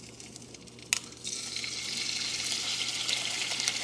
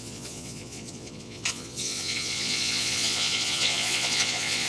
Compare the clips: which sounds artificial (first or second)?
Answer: second